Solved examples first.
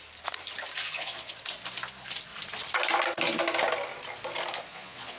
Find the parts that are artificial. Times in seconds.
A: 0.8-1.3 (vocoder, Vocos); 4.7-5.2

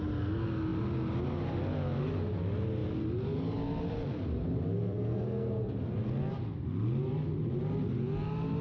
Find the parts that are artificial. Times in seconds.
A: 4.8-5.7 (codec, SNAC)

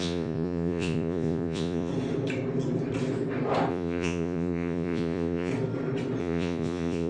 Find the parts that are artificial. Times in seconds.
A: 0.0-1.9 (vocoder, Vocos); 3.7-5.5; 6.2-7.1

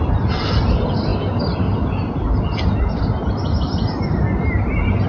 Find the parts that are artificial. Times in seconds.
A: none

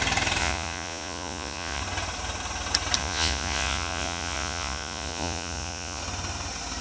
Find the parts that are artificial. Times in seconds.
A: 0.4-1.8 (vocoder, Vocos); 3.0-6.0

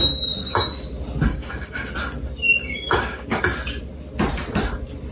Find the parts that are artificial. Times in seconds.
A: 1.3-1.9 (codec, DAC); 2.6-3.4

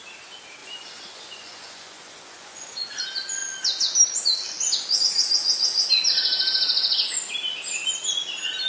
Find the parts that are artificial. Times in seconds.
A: 0.6-3.0 (vocoder, Vocos)

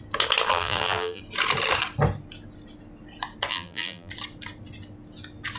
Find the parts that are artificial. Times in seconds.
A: 0.5-1.2 (vocoder, BigVGAN v2); 3.5-4.1